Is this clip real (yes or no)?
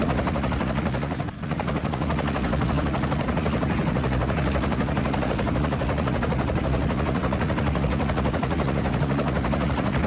no